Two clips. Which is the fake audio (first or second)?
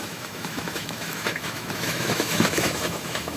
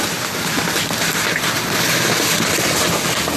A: first